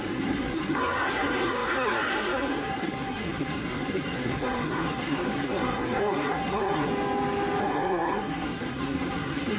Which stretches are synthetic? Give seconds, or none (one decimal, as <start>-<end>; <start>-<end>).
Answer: 0.0-6.9; 7.6-9.6